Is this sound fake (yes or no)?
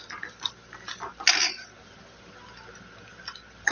no